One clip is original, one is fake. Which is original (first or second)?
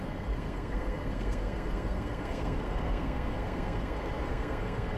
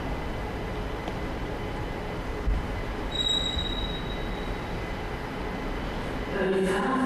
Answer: second